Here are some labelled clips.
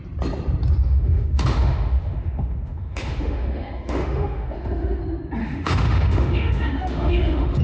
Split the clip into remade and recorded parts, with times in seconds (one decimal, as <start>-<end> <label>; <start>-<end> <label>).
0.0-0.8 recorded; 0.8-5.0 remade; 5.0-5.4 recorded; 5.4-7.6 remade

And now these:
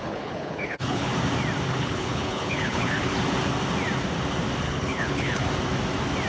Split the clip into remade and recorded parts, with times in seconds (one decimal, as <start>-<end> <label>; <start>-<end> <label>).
0.0-1.1 remade; 1.1-1.7 recorded; 1.7-3.1 remade; 3.1-4.6 recorded; 4.6-5.4 remade; 5.4-6.3 recorded

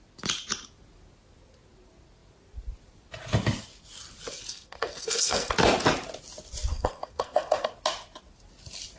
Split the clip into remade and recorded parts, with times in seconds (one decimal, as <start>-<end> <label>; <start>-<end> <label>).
0.0-4.5 recorded; 4.5-5.5 remade; 5.5-6.7 recorded; 6.7-7.7 remade; 7.7-9.0 recorded

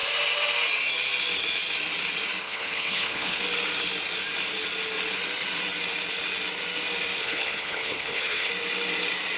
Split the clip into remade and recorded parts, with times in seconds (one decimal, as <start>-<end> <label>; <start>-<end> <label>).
0.0-2.4 recorded; 2.4-3.4 remade; 3.4-7.2 recorded; 7.2-8.5 remade; 8.5-9.4 recorded